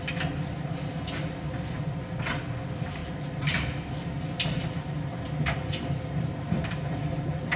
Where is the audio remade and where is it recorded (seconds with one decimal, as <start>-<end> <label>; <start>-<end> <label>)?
0.0-7.6 recorded